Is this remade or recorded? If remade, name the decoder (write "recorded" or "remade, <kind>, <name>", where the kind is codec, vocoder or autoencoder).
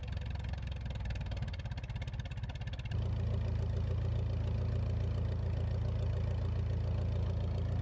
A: recorded